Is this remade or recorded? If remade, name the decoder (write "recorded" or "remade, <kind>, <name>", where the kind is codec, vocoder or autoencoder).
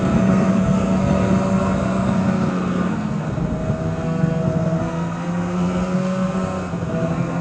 remade, codec, SNAC